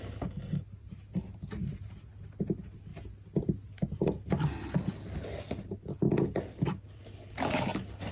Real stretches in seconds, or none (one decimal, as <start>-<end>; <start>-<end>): 0.0-8.1